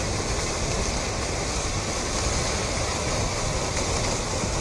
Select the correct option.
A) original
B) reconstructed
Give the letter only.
A